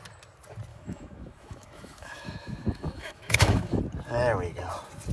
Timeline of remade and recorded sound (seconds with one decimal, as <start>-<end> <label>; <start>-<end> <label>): 0.0-0.7 recorded; 0.7-3.8 remade; 3.8-5.1 recorded